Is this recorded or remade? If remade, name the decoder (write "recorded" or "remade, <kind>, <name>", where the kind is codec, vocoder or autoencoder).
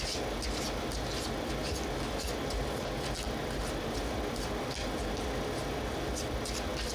recorded